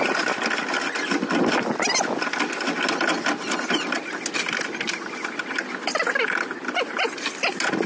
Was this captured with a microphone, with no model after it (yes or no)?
yes